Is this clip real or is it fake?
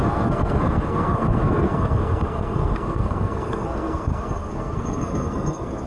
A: fake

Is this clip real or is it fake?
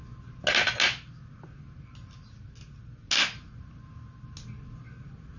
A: real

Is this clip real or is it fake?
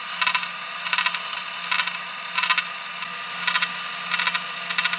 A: real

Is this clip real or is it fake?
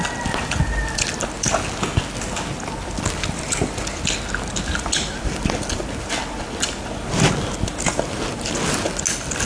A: real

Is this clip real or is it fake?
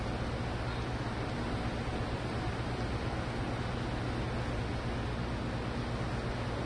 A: real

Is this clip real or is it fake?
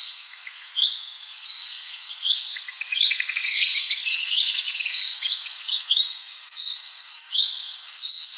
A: fake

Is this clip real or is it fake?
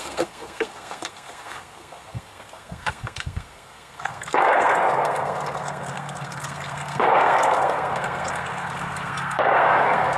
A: fake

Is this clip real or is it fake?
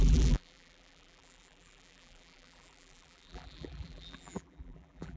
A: fake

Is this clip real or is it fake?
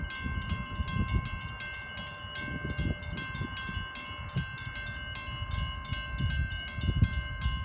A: real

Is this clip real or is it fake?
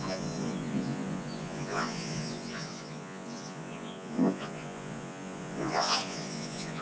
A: fake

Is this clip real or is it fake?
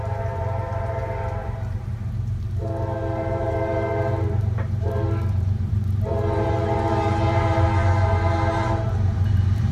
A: fake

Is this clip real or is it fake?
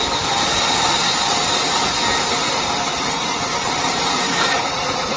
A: real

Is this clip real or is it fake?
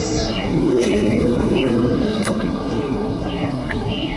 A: fake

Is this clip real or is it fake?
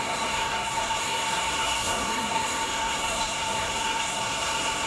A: fake